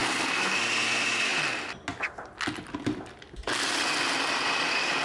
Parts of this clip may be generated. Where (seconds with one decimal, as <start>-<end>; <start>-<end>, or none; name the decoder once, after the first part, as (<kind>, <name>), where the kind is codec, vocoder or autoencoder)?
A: 0.0-0.6 (codec, SNAC)